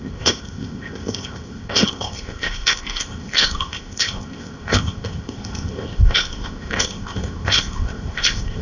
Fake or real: fake